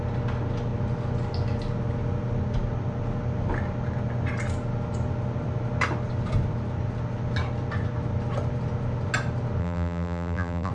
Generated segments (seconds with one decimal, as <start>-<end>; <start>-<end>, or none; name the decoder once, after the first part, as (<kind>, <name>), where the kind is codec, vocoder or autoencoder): 9.6-10.7 (vocoder, BigVGAN v2)